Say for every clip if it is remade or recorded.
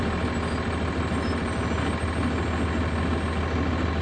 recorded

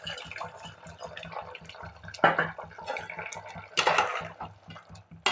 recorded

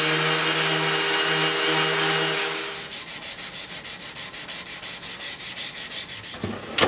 recorded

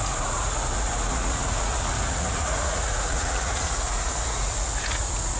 remade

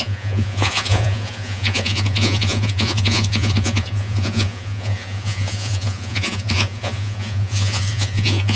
remade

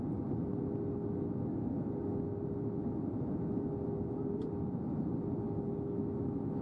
recorded